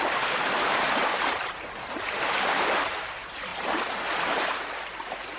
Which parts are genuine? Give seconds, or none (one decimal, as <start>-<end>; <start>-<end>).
3.5-4.2